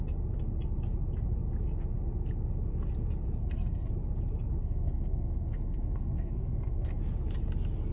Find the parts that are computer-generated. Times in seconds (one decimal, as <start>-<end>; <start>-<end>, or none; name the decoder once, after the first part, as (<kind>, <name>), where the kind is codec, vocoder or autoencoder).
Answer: 3.4-3.9 (codec, SNAC); 4.6-7.0